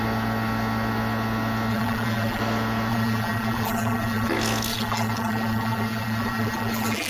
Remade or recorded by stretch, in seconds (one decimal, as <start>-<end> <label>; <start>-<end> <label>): 0.0-1.7 recorded; 1.7-2.4 remade; 2.4-2.9 recorded; 2.9-4.3 remade; 4.3-4.7 recorded; 4.7-7.1 remade